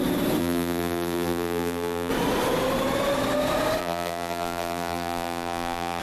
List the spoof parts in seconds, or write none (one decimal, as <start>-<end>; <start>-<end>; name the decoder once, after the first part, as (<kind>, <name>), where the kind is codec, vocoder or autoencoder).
0.4-2.1 (vocoder, BigVGAN v2); 3.8-6.0